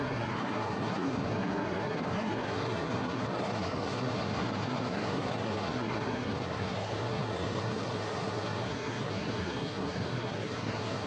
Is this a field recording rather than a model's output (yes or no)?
no